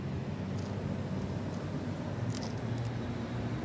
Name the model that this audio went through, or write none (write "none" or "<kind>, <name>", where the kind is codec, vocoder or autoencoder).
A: none